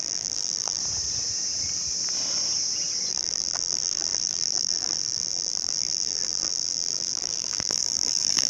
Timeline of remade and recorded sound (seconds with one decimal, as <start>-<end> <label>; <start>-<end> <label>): 0.0-0.8 remade; 0.8-3.1 recorded; 3.1-8.5 remade